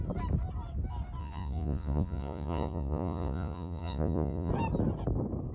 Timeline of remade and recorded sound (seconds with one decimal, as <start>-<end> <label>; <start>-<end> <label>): 0.0-1.2 recorded; 1.2-4.5 remade; 4.5-5.5 recorded